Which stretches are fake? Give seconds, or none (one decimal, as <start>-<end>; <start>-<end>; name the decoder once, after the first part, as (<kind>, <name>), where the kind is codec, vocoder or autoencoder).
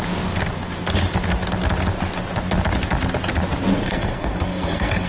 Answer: 3.7-5.1 (codec, SNAC)